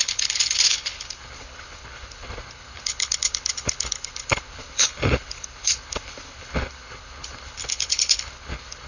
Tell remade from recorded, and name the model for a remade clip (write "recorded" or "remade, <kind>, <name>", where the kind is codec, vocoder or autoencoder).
remade, codec, HILCodec